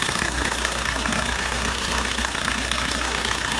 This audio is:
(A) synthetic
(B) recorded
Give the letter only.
A